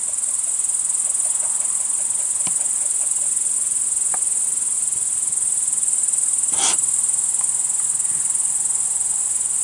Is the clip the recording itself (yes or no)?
yes